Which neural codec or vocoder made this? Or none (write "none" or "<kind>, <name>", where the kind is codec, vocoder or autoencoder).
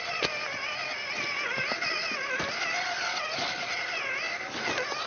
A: none